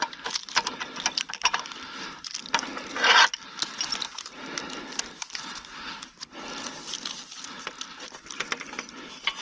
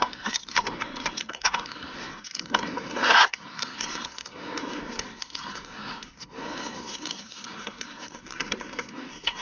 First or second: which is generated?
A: second